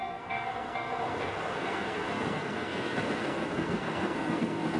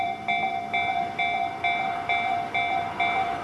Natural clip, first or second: second